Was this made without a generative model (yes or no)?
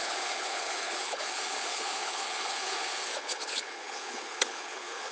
no